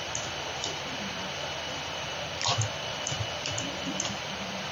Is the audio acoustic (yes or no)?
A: no